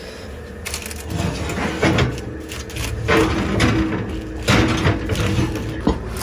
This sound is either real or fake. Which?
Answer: real